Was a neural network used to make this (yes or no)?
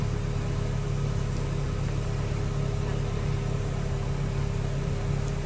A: no